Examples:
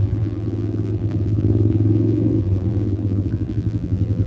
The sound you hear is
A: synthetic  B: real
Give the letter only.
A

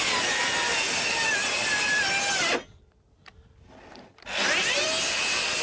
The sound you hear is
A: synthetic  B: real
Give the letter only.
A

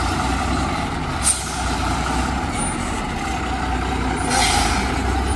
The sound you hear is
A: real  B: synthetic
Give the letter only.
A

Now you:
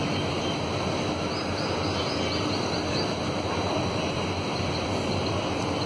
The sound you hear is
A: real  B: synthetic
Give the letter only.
A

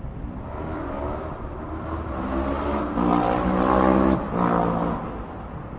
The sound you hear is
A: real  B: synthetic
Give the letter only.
A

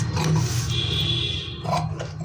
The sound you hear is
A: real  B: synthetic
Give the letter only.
A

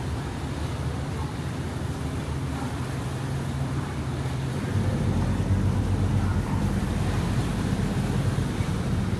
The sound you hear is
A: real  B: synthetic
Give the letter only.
B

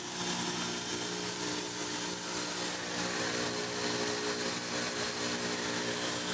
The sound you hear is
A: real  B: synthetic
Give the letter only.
A